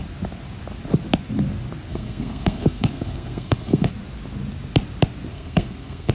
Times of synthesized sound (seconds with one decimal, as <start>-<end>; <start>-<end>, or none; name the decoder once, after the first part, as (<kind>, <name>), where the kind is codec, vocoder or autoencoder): 1.9-3.9 (codec, SNAC); 5.3-6.1